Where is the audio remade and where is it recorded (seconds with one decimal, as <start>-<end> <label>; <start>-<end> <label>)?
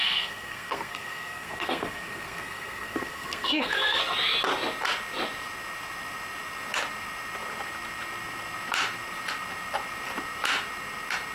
0.0-4.0 remade; 4.0-11.3 recorded